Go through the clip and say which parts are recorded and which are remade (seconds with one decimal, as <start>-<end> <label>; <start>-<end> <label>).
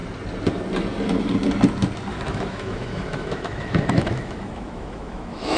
0.0-2.1 recorded; 2.1-5.6 remade